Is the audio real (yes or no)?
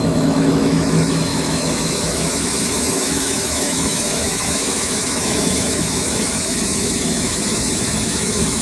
no